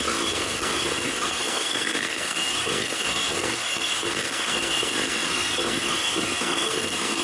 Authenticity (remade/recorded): remade